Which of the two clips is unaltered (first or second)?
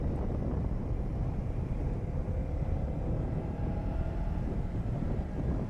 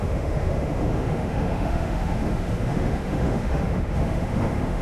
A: first